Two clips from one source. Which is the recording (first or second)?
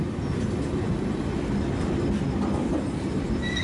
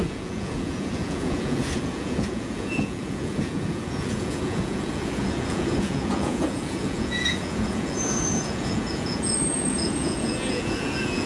first